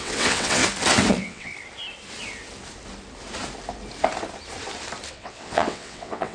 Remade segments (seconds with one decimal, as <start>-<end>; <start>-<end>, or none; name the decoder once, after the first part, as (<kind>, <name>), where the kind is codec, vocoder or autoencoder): 0.0-0.6 (vocoder, WaveNeXt); 1.1-1.5; 5.1-6.3